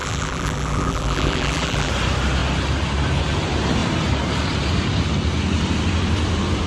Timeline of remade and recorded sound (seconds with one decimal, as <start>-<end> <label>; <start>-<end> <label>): 0.0-1.9 remade; 1.9-6.7 recorded